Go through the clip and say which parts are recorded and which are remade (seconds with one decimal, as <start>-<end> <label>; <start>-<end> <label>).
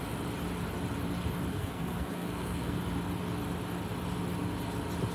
0.0-1.5 recorded; 1.5-2.8 remade; 2.8-5.1 recorded